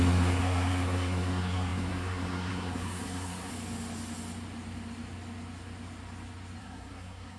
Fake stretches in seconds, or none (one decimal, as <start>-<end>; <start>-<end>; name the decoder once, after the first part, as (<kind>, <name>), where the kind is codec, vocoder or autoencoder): 0.0-3.5 (codec, SNAC); 6.6-7.4